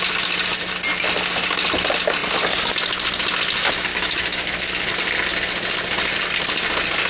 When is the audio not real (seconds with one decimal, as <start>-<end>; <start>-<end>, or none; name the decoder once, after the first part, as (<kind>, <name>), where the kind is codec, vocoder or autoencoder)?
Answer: 3.9-4.9 (autoencoder, DAC-VAE)